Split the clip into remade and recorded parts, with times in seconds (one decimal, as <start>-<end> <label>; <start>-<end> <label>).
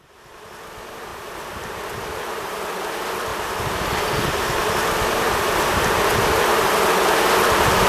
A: 0.0-1.1 recorded; 1.1-2.8 remade; 2.8-3.3 recorded; 3.3-3.9 remade; 3.9-7.9 recorded